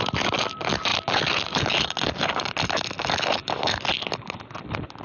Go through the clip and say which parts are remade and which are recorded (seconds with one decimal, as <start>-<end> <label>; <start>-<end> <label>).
0.0-5.0 recorded